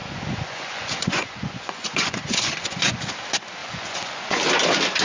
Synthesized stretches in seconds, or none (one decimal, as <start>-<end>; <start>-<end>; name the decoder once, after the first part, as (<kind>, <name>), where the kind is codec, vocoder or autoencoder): 0.0-3.0 (vocoder, Vocos); 3.6-4.4